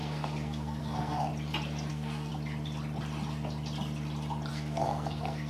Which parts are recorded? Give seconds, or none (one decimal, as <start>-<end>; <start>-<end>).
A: 1.3-1.9; 2.3-4.5